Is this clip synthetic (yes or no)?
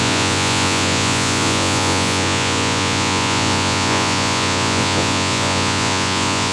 yes